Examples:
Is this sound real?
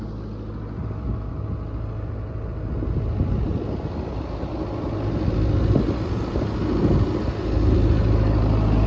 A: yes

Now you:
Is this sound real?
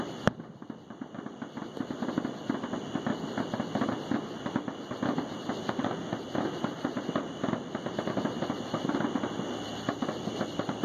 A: yes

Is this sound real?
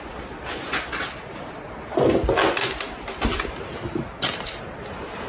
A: yes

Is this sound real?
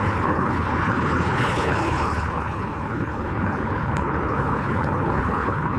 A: no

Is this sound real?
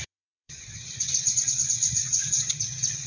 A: no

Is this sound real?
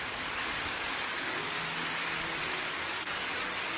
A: no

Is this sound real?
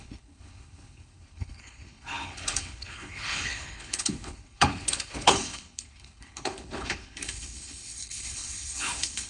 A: no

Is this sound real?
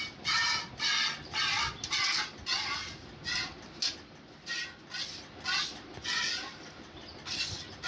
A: yes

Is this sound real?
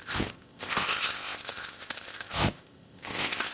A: no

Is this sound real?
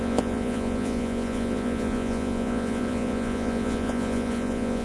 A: no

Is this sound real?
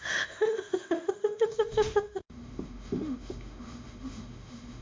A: no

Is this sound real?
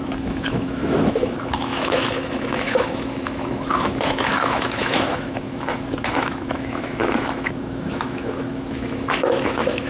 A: no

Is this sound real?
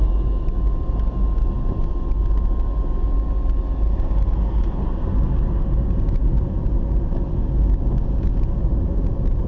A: yes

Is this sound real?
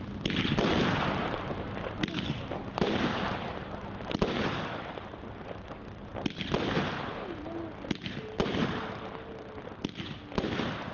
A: yes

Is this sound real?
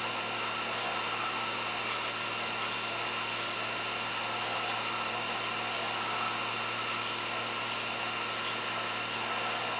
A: yes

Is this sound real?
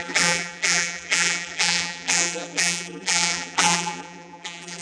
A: no